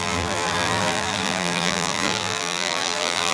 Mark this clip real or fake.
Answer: fake